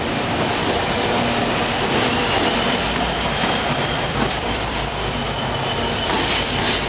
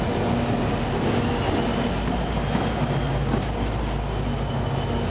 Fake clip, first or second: first